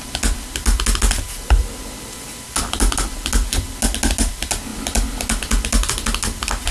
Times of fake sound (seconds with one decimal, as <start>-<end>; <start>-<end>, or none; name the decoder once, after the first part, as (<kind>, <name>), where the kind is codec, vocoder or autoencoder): none